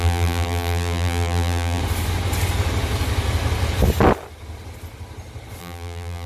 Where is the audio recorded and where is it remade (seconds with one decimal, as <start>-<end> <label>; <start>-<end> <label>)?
0.0-1.8 remade; 1.8-5.6 recorded; 5.6-6.3 remade